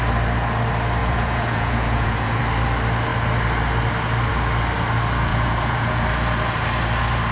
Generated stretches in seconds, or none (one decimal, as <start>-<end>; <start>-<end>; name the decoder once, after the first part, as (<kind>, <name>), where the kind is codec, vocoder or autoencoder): 1.0-2.4 (vocoder, Vocos); 5.3-6.0